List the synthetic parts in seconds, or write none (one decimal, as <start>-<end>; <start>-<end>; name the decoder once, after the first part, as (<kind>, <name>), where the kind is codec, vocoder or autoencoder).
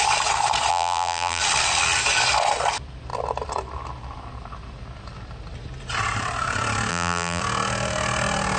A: 0.7-1.4 (vocoder, BigVGAN v2); 6.9-7.4